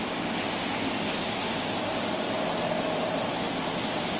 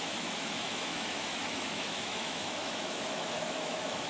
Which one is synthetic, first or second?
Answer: second